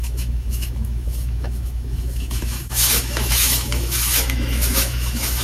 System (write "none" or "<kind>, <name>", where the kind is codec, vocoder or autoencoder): autoencoder, DAC-VAE